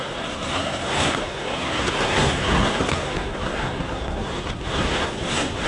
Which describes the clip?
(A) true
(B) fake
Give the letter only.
B